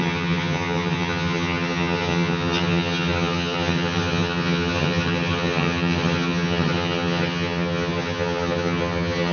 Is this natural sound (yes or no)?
no